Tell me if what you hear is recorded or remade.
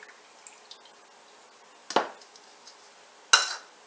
recorded